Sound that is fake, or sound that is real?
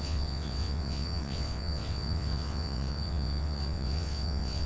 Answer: fake